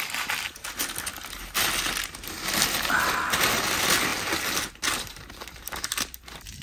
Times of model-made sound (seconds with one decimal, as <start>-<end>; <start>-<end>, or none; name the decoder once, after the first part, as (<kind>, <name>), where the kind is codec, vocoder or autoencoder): none